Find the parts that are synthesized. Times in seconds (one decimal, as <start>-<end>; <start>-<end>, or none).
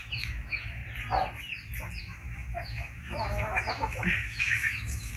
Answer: 0.0-0.8; 2.0-5.2